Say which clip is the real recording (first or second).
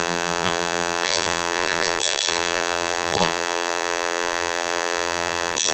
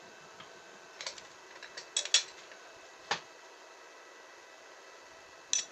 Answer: second